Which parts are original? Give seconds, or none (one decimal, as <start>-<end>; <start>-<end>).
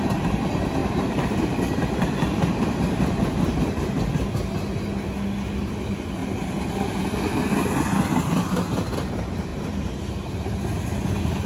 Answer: 0.0-0.8; 4.0-6.2; 7.0-9.5; 10.1-11.5